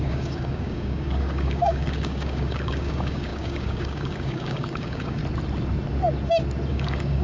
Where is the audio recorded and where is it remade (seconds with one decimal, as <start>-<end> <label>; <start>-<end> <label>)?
0.0-5.2 remade; 5.2-6.7 recorded; 6.7-7.2 remade